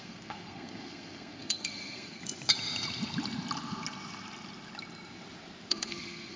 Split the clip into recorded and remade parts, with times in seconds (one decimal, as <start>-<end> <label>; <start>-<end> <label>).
0.0-2.2 remade; 2.2-5.7 recorded; 5.7-6.4 remade